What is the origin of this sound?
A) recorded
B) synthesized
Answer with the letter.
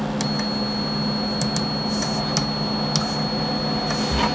A